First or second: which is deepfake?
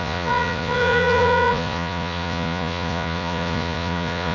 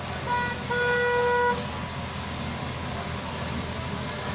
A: first